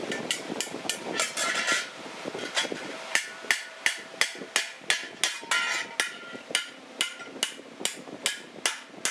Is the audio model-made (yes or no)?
no